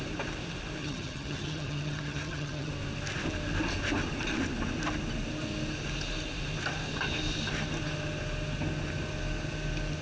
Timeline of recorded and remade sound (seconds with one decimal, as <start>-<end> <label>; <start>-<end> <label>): 0.0-0.8 recorded; 0.8-2.7 remade; 2.7-10.0 recorded